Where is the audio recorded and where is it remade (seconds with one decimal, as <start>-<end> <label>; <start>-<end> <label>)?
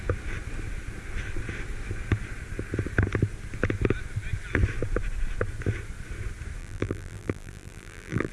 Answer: 0.0-6.6 recorded; 6.6-8.3 remade